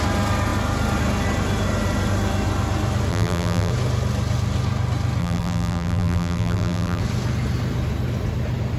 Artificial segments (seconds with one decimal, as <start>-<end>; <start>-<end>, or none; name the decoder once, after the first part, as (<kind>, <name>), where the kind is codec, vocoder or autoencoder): 3.1-3.7 (vocoder, BigVGAN v2); 5.2-7.0